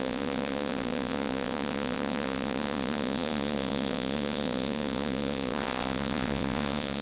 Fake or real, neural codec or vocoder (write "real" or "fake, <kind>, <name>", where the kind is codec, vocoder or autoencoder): fake, vocoder, WaveNeXt